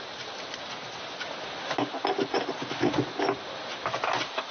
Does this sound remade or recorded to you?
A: recorded